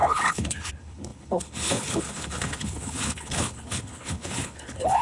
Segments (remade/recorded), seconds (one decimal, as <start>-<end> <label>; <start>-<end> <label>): 0.0-5.0 remade